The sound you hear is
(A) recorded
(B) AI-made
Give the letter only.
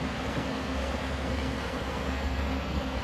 B